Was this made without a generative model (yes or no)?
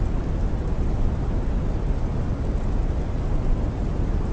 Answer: yes